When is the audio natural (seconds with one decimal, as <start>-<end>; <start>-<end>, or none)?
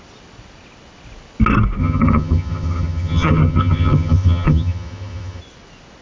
0.0-1.8; 5.4-6.0